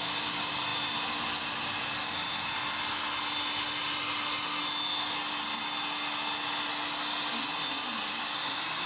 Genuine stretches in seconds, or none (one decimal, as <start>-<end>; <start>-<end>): 0.0-8.9